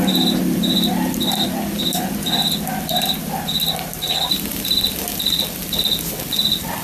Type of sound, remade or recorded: recorded